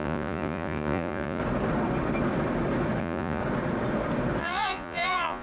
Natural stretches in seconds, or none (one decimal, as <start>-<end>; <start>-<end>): 1.4-3.0; 3.4-4.4